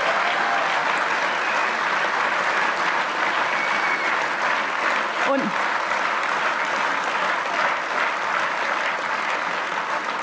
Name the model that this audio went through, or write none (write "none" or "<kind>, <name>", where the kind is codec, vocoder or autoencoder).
none